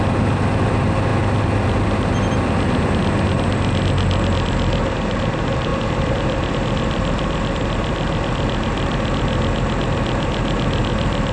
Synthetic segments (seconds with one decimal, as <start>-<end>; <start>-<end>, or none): none